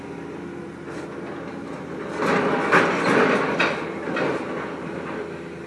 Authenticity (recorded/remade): recorded